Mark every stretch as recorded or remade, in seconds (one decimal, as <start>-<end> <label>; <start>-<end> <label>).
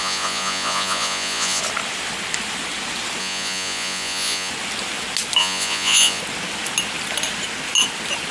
0.0-1.6 remade; 1.6-3.2 recorded; 3.2-4.5 remade; 4.5-5.4 recorded; 5.4-6.2 remade; 6.2-8.3 recorded